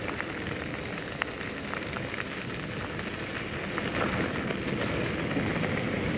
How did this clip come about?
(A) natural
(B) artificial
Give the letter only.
A